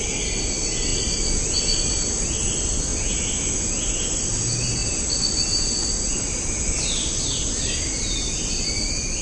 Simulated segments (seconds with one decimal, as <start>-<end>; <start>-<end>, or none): none